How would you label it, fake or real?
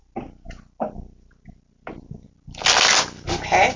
real